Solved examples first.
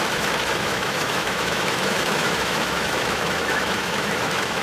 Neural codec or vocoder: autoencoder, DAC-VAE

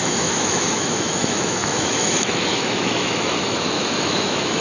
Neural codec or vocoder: autoencoder, DAC-VAE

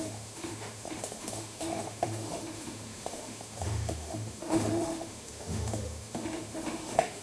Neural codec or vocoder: autoencoder, DAC-VAE